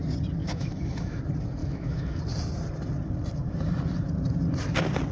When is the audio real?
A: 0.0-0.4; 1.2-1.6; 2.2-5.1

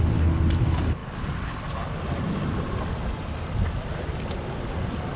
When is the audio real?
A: 0.0-5.2

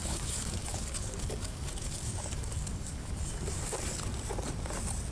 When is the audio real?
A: 3.1-5.1

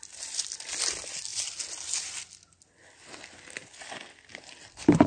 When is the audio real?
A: 0.0-5.1

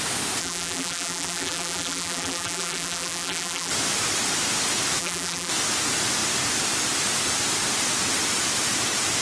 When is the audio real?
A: 0.0-0.4; 3.7-5.0; 5.5-9.2

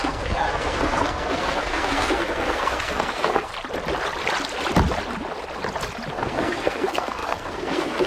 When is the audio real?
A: 3.5-6.1